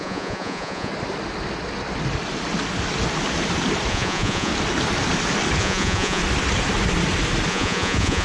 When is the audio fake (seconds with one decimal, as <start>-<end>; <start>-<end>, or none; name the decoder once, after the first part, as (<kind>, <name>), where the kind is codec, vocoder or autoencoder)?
0.0-0.9 (vocoder, Vocos); 3.9-4.5; 5.6-6.2; 7.5-8.2